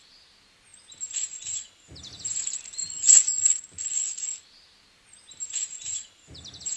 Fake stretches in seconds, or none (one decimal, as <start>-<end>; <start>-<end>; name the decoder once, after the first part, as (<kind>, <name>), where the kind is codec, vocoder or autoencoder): 2.8-3.4 (vocoder, Vocos)